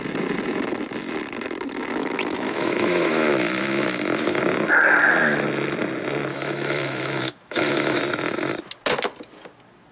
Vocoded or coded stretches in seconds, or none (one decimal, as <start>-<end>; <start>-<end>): 2.0-4.4; 6.3-8.0